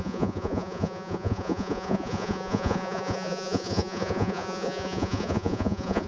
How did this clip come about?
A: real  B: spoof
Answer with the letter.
B